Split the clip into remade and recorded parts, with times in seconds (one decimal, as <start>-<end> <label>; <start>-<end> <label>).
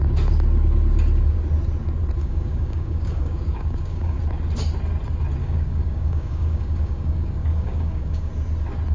0.0-2.2 recorded; 2.2-4.2 remade; 4.2-5.4 recorded; 5.4-8.3 remade; 8.3-8.9 recorded